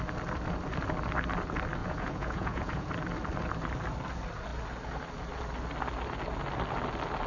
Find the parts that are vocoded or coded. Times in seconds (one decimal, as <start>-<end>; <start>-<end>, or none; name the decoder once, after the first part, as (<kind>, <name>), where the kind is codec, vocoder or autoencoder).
1.8-2.9 (vocoder, Vocos)